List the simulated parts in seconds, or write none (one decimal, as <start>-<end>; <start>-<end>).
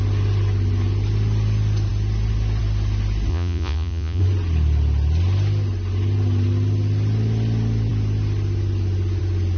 3.3-4.2